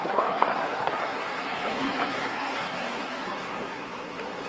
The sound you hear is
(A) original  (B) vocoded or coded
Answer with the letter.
B